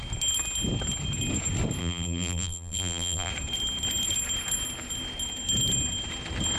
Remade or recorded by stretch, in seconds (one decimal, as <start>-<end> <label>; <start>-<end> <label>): 0.0-1.8 recorded; 1.8-3.3 remade; 3.3-6.6 recorded

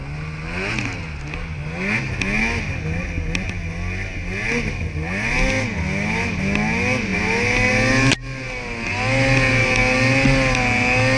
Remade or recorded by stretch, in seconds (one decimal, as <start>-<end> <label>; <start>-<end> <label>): 0.0-11.2 recorded

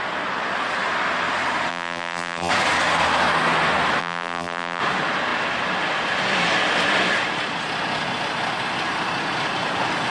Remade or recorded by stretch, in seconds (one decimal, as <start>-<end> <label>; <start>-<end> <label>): 0.0-1.7 recorded; 1.7-2.5 remade; 2.5-4.0 recorded; 4.0-4.8 remade; 4.8-10.1 recorded